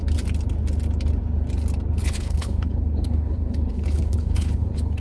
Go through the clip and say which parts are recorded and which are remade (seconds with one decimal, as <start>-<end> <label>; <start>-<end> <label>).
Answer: 0.0-2.0 recorded; 2.0-5.0 remade